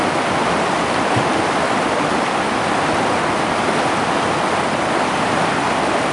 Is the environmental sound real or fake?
real